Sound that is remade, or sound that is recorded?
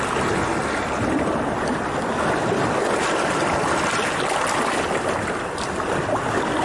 recorded